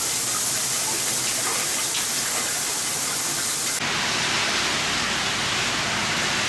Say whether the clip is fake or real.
real